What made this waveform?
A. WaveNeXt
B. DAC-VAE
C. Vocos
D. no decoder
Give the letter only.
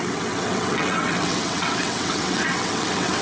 A